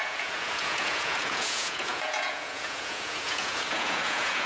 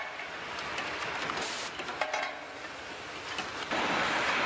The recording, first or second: second